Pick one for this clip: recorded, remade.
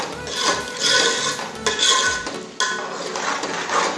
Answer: recorded